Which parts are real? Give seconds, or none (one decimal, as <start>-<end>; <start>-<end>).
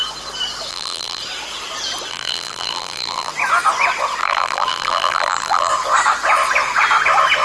0.0-0.7; 1.2-2.1; 3.3-4.2; 5.7-7.4